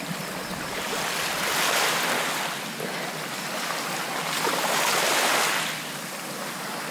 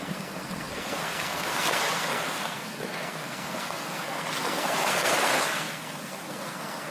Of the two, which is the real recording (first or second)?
first